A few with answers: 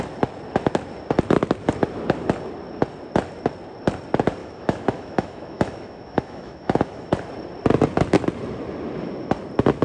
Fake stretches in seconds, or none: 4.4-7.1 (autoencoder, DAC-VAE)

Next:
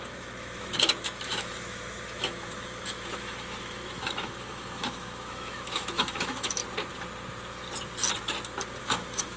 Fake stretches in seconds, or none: 0.0-6.6 (autoencoder, DAC-VAE); 8.8-9.4

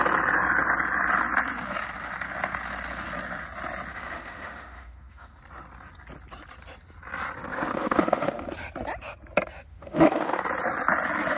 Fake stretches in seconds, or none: 3.9-5.4 (autoencoder, DAC-VAE); 7.5-8.5; 9.7-10.4

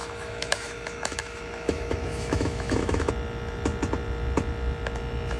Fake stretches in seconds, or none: 0.0-3.1 (autoencoder, DAC-VAE)

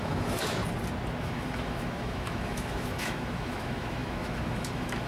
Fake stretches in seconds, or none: 0.0-0.6 (autoencoder, DAC-VAE); 1.2-5.1

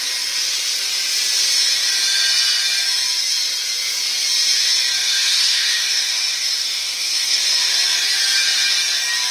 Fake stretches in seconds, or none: 5.0-7.4 (autoencoder, DAC-VAE)

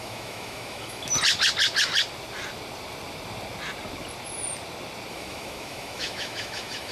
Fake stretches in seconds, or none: 0.0-1.1 (autoencoder, DAC-VAE); 5.1-6.9

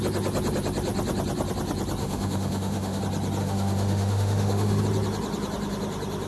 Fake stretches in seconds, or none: 2.0-3.0 (autoencoder, DAC-VAE); 3.4-4.8